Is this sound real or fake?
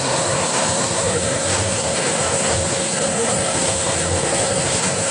fake